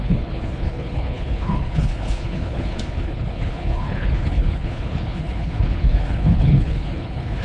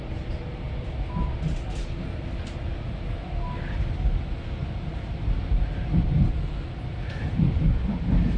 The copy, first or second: first